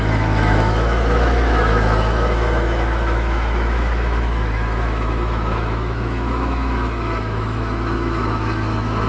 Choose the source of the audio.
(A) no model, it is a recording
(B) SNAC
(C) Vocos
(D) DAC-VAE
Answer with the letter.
D